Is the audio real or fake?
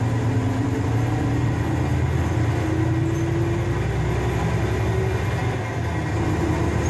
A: real